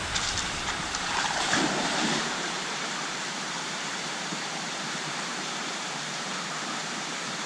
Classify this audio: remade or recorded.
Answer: remade